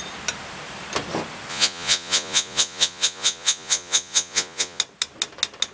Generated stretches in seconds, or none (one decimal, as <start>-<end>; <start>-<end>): 1.5-4.8